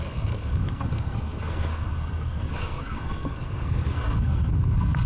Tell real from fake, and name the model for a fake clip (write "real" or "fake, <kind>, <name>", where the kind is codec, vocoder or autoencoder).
fake, codec, SNAC